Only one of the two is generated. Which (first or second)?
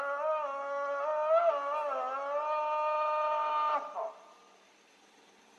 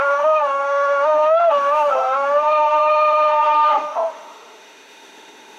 second